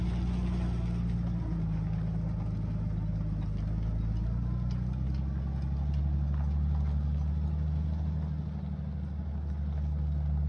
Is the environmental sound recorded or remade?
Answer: recorded